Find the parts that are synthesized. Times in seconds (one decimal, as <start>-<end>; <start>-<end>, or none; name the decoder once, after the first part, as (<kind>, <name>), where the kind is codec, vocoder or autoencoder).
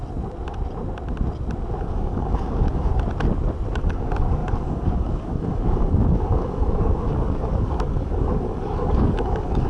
1.8-2.9 (codec, DAC); 3.7-9.7